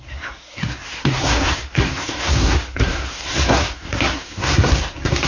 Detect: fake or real fake